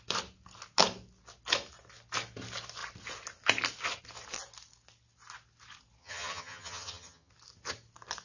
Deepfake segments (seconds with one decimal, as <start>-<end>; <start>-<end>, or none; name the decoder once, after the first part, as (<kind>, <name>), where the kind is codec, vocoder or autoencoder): 6.0-7.3 (vocoder, HiFi-GAN)